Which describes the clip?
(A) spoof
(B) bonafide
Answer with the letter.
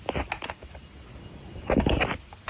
B